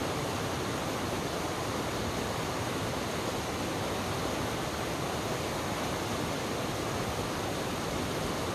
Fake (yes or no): no